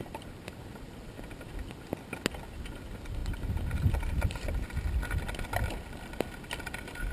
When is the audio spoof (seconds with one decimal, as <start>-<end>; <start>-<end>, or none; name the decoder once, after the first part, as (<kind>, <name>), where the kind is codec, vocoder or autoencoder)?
0.0-0.6 (vocoder, BigVGAN v2)